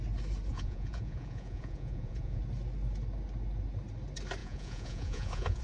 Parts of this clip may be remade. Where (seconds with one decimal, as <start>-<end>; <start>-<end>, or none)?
0.5-2.4; 4.4-5.6

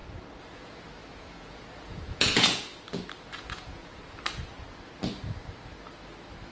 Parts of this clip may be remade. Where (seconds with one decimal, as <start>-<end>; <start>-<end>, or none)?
0.5-2.7; 3.2-3.9

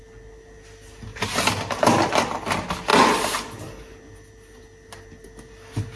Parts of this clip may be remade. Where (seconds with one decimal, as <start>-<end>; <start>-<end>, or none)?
none

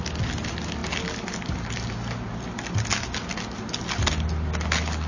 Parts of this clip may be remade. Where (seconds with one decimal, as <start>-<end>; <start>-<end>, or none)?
none

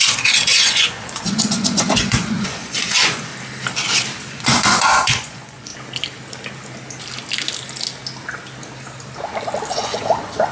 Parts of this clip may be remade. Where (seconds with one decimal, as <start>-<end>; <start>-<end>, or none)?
0.0-3.3; 4.3-5.7; 9.7-10.5

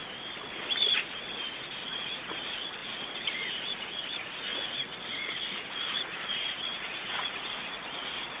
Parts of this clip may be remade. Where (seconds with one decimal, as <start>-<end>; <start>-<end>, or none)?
0.9-8.4

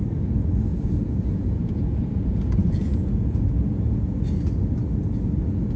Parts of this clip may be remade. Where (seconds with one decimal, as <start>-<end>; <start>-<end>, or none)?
0.7-4.2